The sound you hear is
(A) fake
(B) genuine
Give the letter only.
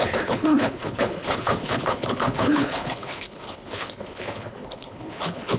A